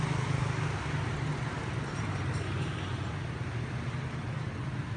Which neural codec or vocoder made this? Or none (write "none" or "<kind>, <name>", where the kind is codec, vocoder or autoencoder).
none